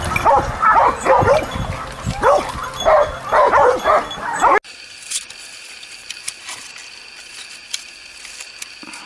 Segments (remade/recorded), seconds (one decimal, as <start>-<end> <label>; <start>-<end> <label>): 0.0-9.1 recorded